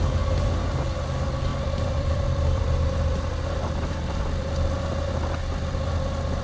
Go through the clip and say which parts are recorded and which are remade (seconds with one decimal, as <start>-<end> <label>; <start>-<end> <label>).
0.0-1.5 recorded; 1.5-5.2 remade; 5.2-6.4 recorded